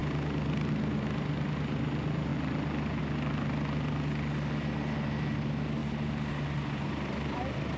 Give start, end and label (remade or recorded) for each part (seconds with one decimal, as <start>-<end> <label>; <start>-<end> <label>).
0.0-5.8 recorded; 5.8-6.3 remade; 6.3-7.8 recorded